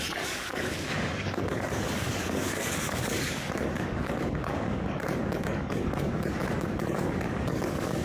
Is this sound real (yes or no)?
no